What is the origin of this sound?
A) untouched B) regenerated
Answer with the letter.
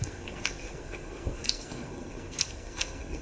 B